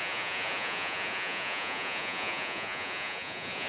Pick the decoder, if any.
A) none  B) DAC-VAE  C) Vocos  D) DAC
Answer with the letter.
C